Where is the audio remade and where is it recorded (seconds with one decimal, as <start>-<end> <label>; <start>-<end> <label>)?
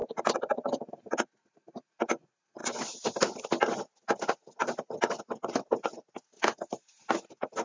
0.0-7.6 recorded